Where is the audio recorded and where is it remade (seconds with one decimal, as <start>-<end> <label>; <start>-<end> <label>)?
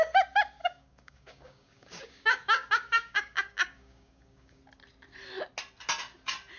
0.0-0.6 recorded; 0.6-4.6 remade; 4.6-6.6 recorded